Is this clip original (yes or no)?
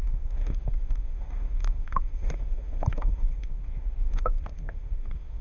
no